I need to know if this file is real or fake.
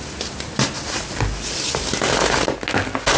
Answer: real